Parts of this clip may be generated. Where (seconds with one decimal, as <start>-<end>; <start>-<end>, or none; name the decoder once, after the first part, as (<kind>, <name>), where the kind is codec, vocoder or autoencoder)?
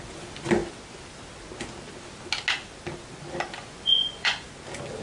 3.6-4.5 (vocoder, Vocos)